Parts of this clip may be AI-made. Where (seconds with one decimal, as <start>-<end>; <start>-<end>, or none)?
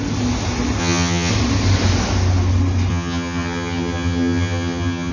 0.8-1.3; 2.9-5.1